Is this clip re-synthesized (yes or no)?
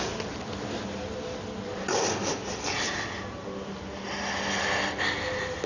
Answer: no